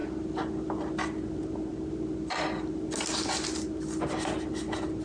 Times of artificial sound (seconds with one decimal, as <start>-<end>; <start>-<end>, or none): none